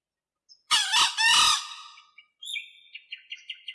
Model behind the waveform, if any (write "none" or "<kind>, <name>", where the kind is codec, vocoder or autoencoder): none